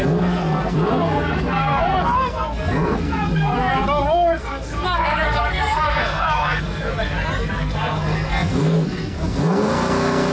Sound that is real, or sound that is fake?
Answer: fake